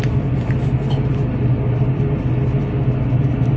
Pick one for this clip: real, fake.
real